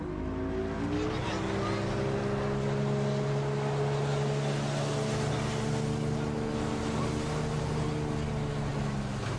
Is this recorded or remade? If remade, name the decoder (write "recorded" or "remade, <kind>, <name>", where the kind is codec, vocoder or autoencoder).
recorded